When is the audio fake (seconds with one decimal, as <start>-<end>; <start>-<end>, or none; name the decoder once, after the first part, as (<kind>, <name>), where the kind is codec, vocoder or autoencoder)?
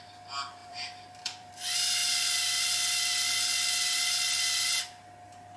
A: 0.6-1.5 (vocoder, BigVGAN v2)